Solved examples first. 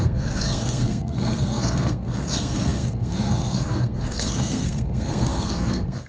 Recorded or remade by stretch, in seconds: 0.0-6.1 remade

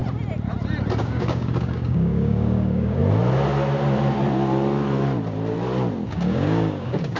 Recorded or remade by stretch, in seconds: 0.0-1.0 recorded; 1.0-3.0 remade; 3.0-6.1 recorded; 6.1-7.2 remade

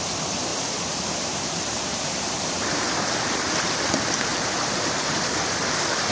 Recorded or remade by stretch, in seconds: 0.0-0.5 recorded; 0.5-3.3 remade; 3.3-4.3 recorded; 4.3-5.4 remade; 5.4-6.1 recorded

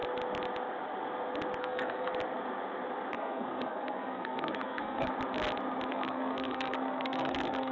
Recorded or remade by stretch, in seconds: 0.0-1.6 recorded; 1.6-2.1 remade; 2.1-3.1 recorded; 3.1-5.1 remade; 5.1-5.9 recorded; 5.9-7.7 remade

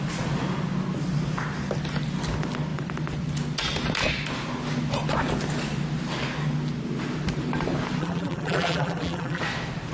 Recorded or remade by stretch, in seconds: 0.0-8.0 recorded; 8.0-9.4 remade; 9.4-9.9 recorded